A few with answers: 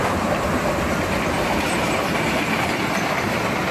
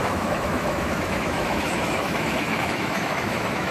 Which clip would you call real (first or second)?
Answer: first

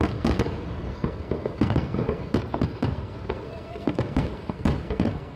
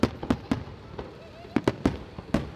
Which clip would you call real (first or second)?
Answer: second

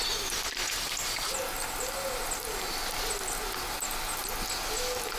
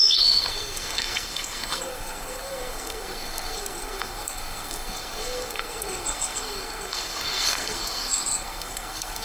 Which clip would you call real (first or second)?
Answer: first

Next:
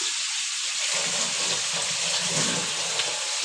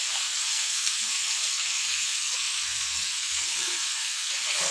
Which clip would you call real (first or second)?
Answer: first